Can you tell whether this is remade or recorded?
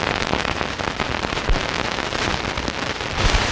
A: remade